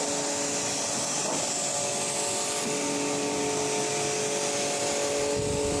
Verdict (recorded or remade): recorded